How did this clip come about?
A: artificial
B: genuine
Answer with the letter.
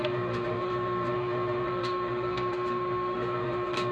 A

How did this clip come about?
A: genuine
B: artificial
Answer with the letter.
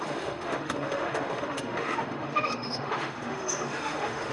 B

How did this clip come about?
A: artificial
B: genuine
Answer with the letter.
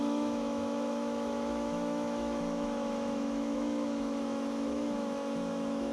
A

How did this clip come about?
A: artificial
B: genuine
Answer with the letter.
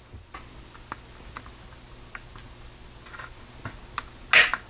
B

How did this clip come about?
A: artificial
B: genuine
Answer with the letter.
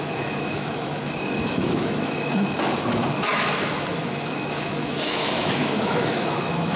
A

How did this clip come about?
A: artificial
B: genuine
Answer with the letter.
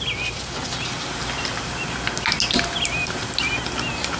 B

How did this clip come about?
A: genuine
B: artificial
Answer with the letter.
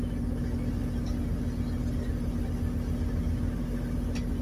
A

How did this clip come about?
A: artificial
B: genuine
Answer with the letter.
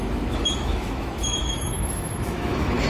A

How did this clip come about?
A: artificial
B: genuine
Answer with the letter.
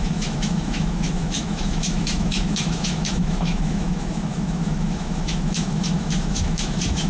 A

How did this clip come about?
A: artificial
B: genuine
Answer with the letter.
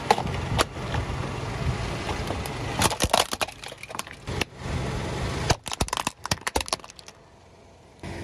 B